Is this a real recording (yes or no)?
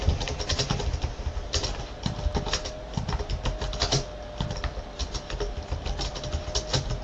yes